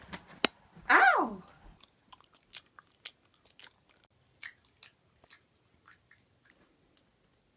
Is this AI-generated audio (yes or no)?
no